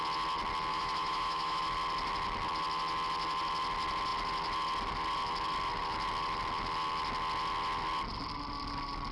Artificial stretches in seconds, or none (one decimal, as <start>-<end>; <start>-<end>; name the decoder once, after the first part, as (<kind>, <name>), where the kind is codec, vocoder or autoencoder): 0.7-1.6 (autoencoder, DAC-VAE)